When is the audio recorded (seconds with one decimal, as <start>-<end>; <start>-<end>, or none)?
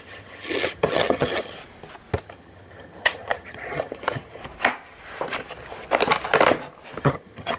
1.6-2.2; 4.4-7.0